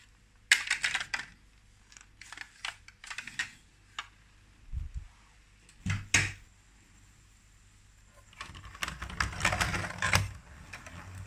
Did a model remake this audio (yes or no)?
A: no